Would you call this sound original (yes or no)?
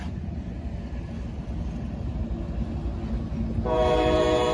yes